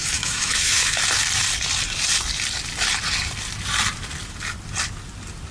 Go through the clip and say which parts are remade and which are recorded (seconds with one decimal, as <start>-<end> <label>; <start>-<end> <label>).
0.0-1.0 remade; 1.0-5.5 recorded